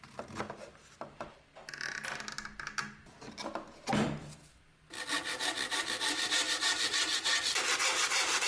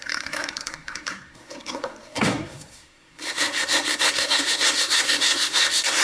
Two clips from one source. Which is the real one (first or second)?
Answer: first